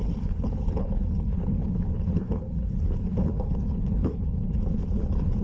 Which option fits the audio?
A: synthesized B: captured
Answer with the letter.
A